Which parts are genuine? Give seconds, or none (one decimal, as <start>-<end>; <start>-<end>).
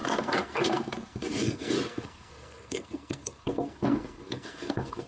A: none